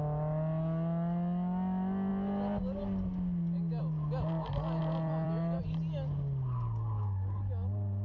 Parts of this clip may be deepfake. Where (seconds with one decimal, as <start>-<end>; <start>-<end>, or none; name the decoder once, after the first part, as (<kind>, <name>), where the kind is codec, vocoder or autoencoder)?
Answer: 4.8-5.6 (vocoder, BigVGAN v2)